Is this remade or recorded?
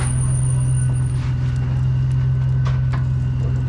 recorded